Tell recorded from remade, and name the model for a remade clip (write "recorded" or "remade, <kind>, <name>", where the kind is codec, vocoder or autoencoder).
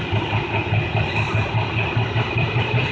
recorded